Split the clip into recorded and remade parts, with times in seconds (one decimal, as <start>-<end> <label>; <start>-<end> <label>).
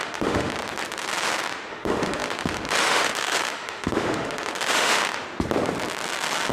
0.0-0.5 remade; 0.5-1.7 recorded; 1.7-5.2 remade; 5.2-6.5 recorded